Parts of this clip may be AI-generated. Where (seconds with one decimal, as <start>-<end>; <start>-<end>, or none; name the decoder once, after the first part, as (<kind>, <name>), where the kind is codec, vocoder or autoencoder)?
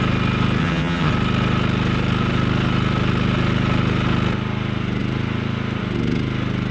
0.6-1.1 (vocoder, HiFi-GAN)